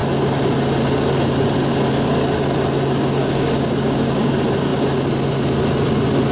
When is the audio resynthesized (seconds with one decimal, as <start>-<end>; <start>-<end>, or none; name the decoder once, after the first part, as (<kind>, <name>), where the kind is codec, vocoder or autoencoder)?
3.2-4.3 (codec, DAC)